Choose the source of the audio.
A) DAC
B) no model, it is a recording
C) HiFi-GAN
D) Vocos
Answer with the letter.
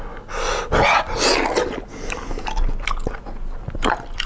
B